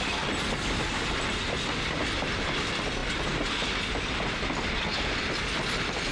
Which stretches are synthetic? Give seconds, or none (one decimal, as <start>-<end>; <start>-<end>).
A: none